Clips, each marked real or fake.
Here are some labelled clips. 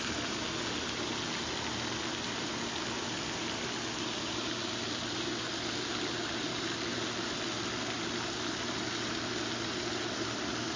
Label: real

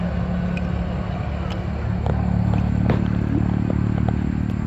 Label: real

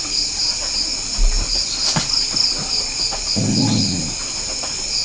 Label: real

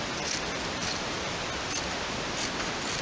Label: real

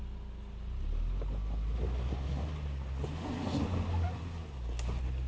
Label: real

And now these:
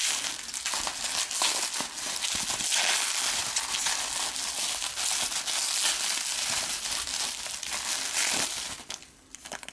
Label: real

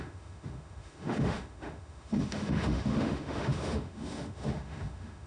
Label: fake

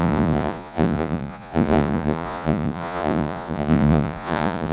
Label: fake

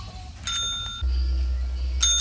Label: real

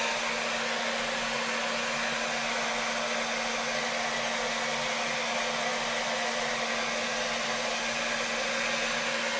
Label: real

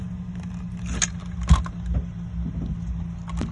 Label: real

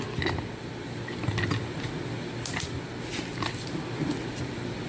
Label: real